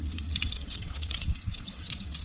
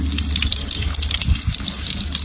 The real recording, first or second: second